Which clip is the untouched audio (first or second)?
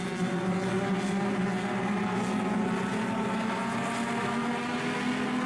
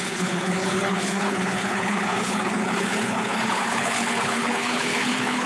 first